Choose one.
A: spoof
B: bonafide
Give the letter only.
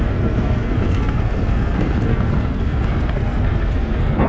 A